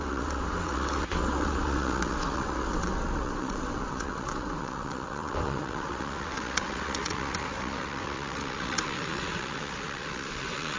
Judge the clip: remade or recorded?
remade